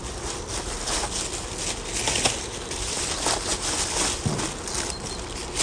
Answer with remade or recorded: recorded